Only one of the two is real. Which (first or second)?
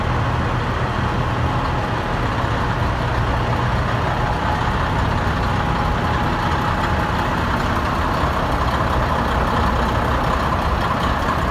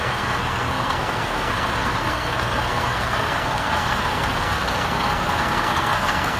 first